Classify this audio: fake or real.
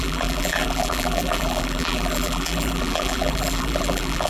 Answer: fake